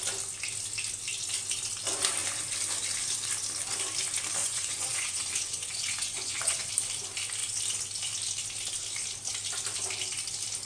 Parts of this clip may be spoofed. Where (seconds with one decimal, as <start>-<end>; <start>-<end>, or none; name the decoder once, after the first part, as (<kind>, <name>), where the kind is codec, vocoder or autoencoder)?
4.4-6.7 (vocoder, Vocos)